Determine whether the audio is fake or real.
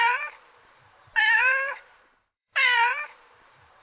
fake